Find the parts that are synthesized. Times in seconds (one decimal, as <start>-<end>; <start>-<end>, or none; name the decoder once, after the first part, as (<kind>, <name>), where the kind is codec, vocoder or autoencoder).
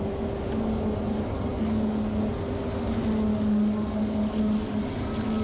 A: 1.5-2.2 (codec, DAC); 3.3-4.4